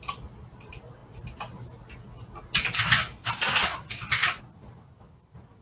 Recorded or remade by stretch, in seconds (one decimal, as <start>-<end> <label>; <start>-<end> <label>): 0.0-5.6 recorded